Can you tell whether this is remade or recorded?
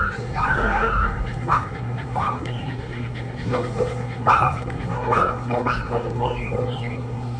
remade